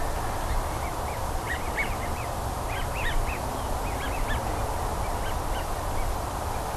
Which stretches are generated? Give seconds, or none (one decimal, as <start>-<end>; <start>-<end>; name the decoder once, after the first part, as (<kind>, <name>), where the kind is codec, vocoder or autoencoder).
0.9-3.4 (vocoder, BigVGAN v2)